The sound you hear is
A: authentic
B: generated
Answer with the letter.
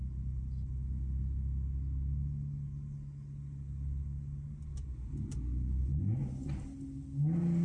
A